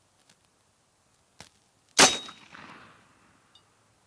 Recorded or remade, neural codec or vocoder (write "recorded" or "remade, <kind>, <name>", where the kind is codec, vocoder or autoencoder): recorded